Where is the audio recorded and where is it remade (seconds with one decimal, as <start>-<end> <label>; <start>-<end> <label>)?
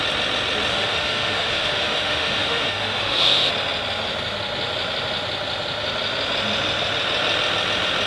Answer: 0.0-0.7 recorded; 0.7-3.5 remade; 3.5-8.1 recorded